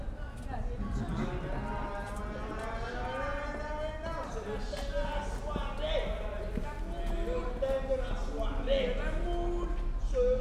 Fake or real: real